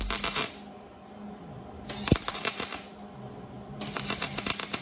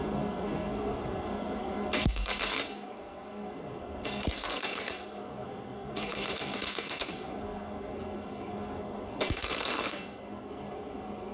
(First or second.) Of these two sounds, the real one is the first